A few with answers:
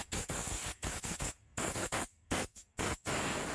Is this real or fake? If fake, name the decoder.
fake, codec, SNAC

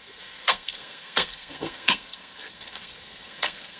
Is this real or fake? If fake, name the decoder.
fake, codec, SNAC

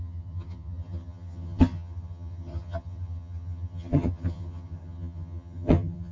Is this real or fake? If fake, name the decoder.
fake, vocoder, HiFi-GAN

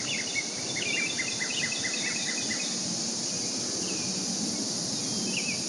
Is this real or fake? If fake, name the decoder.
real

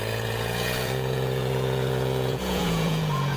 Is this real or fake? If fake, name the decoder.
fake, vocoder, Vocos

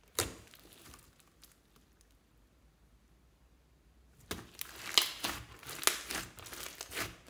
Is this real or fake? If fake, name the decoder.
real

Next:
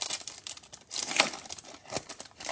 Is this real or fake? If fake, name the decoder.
real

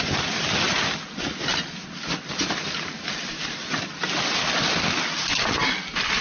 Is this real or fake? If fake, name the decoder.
real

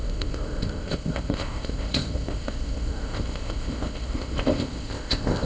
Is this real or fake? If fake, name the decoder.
fake, codec, ZipCodec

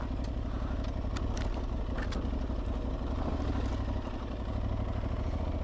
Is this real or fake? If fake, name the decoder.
real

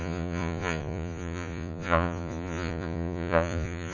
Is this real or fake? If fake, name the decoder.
fake, vocoder, Vocos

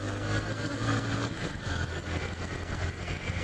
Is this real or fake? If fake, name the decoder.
fake, codec, SNAC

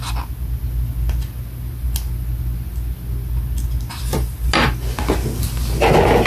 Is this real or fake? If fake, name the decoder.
real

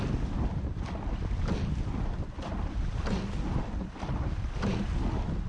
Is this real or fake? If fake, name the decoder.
real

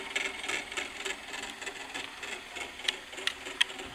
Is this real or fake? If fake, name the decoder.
real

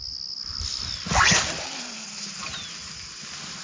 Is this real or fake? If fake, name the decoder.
real